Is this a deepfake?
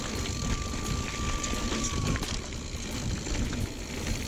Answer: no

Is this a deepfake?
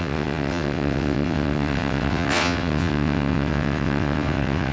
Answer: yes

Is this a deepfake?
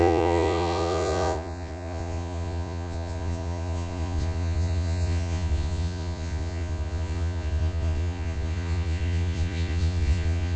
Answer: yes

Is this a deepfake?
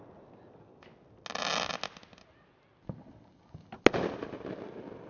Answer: no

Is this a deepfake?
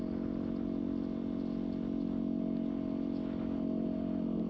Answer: no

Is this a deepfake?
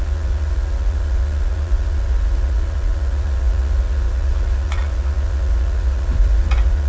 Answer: yes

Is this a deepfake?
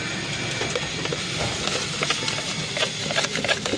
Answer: no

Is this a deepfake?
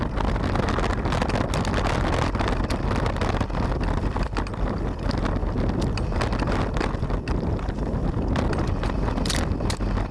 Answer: no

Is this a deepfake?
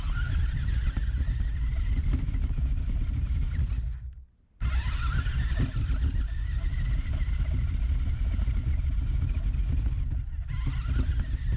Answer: no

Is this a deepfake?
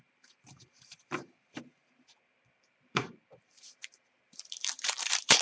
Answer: yes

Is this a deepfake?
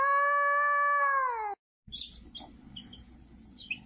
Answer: no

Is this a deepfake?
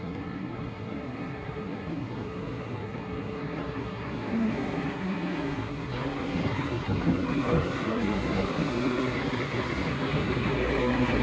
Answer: yes